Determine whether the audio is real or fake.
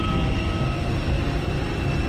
real